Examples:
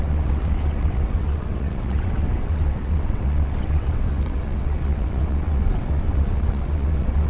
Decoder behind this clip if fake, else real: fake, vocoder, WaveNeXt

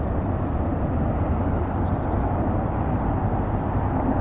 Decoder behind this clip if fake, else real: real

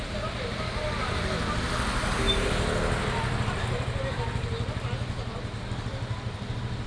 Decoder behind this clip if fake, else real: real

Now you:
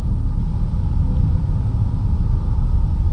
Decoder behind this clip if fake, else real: real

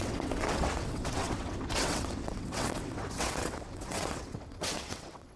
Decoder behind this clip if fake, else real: fake, vocoder, WaveNeXt